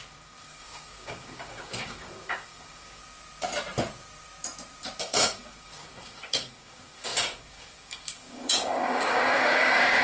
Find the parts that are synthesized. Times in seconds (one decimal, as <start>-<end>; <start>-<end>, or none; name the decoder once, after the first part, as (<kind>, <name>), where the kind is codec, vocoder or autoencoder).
0.0-3.0 (codec, DAC); 5.0-10.0